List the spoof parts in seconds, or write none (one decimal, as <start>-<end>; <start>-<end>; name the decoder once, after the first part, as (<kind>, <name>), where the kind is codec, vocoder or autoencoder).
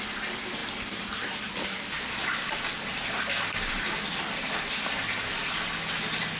none